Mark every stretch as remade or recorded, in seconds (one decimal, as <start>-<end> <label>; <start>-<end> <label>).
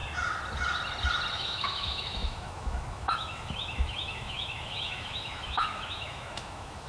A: 0.0-1.3 recorded; 1.3-6.9 remade